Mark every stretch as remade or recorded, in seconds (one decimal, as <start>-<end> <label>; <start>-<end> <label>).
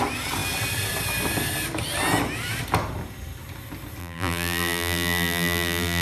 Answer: 0.0-4.0 recorded; 4.0-6.0 remade